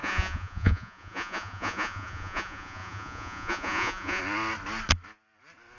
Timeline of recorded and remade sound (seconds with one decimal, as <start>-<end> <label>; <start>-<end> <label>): 0.0-4.2 remade; 4.2-5.8 recorded